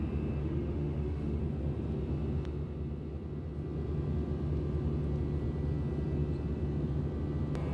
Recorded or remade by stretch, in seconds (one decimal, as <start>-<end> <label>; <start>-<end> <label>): 0.0-0.4 recorded; 0.4-1.4 remade; 1.4-7.7 recorded